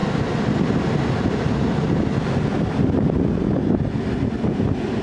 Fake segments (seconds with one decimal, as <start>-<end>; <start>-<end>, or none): none